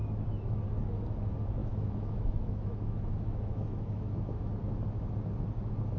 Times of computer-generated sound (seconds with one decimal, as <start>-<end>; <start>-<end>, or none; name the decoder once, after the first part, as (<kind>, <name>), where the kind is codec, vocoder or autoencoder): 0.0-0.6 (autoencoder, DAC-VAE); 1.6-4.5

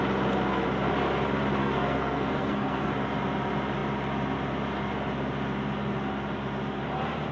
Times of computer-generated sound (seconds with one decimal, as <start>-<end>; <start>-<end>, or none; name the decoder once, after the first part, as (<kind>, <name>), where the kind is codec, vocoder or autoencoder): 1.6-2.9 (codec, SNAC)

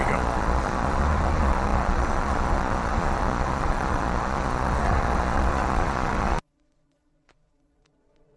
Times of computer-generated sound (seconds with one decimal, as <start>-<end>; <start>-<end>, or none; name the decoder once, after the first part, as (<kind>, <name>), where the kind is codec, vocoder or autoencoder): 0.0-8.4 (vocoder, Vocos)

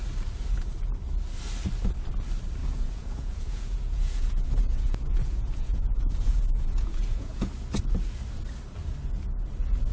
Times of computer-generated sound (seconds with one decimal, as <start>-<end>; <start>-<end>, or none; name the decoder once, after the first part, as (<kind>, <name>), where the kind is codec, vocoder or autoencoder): 2.6-7.5 (vocoder, Vocos)

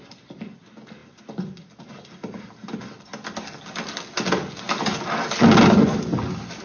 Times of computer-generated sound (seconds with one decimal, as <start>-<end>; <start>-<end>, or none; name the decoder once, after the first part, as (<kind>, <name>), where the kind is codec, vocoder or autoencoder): none